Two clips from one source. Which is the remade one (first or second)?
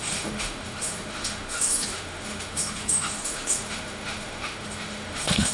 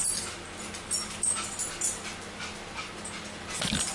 first